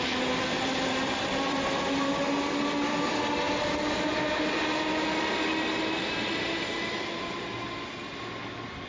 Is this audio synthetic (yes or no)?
no